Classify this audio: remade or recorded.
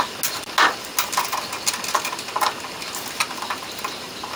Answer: recorded